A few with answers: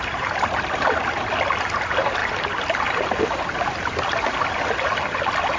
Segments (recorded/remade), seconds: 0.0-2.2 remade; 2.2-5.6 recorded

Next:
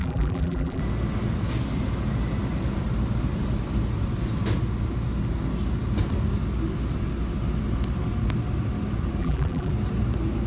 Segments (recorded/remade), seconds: 0.0-0.8 remade; 0.8-9.2 recorded; 9.2-9.7 remade; 9.7-10.5 recorded

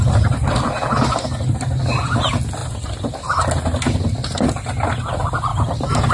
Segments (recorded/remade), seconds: 0.0-5.5 recorded; 5.5-6.1 remade

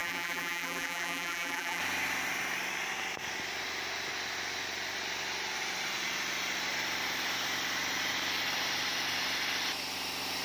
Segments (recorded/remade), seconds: 0.0-1.8 remade; 1.8-10.4 recorded

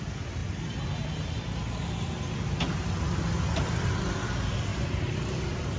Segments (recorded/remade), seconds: 0.0-4.7 recorded; 4.7-5.2 remade; 5.2-5.8 recorded

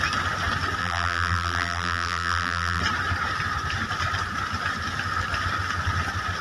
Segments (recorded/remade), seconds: 0.0-0.8 recorded; 0.8-2.8 remade; 2.8-6.4 recorded

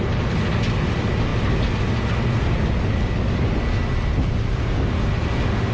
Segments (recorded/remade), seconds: 0.0-5.7 recorded